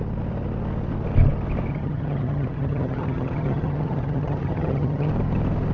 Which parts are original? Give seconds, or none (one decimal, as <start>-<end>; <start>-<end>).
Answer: 0.0-1.7; 5.1-5.7

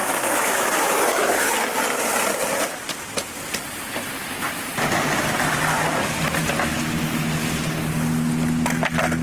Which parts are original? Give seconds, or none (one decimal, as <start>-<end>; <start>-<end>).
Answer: 1.5-9.2

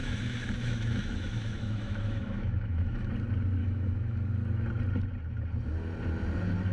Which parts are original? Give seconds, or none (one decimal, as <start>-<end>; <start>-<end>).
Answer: 3.1-3.6; 4.3-6.7

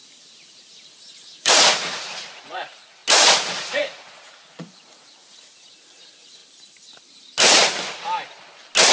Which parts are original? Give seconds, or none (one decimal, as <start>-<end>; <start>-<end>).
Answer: 3.0-3.7; 6.4-8.9

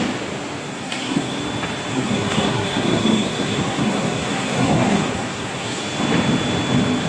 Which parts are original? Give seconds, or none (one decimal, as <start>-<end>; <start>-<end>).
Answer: 0.0-0.7; 1.4-1.9; 5.8-7.1

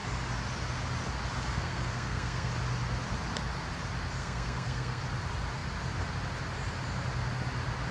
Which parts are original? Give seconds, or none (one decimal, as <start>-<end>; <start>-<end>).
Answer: 0.0-1.5; 2.5-4.2; 5.0-7.9

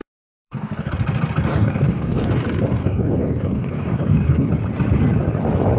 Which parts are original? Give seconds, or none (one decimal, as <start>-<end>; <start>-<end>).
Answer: 0.9-1.5; 2.3-2.8; 4.5-5.8

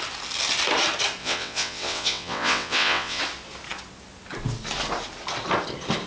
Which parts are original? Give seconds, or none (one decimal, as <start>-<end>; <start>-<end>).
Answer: 0.0-1.2; 3.2-6.1